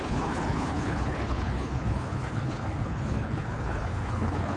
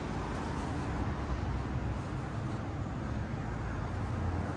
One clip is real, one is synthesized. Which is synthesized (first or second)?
first